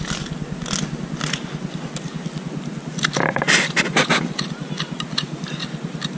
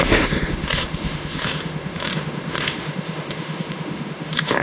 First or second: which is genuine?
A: first